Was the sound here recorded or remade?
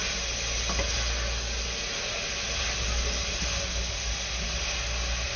recorded